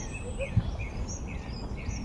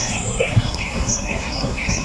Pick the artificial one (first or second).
second